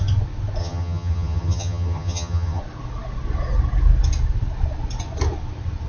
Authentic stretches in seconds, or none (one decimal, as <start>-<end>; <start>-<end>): 0.0-0.6; 2.6-5.9